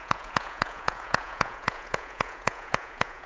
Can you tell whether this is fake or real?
fake